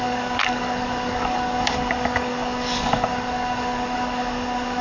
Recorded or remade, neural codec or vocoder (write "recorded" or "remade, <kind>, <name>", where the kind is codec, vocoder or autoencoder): remade, codec, DAC